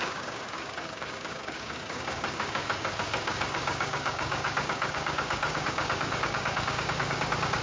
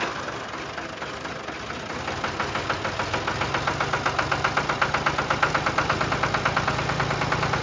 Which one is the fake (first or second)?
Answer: first